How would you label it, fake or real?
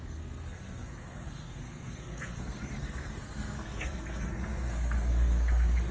fake